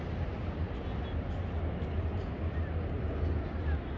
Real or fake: real